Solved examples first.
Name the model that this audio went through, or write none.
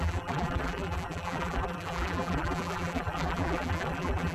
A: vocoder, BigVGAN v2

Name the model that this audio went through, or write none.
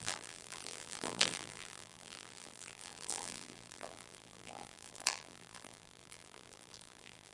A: vocoder, BigVGAN v2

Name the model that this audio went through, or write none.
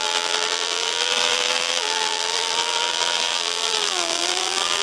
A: vocoder, BigVGAN v2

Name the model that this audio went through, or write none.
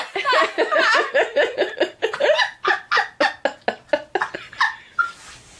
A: none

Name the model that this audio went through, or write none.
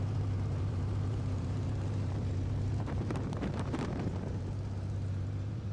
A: vocoder, BigVGAN v2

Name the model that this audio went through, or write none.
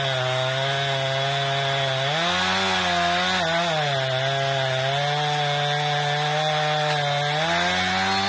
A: none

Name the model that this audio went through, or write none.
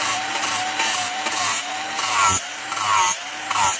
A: vocoder, BigVGAN v2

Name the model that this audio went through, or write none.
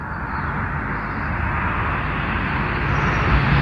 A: none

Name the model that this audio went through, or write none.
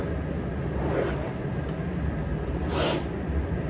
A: none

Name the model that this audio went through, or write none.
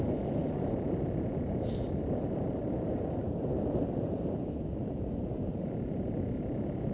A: vocoder, BigVGAN v2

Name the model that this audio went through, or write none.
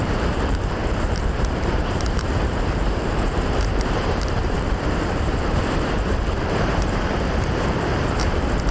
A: vocoder, BigVGAN v2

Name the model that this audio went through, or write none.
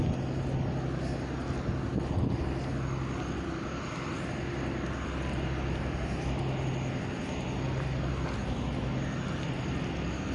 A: none